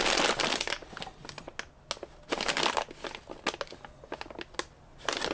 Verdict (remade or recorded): recorded